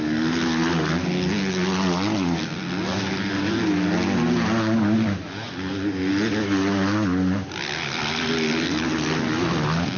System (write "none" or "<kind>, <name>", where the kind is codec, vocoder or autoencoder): none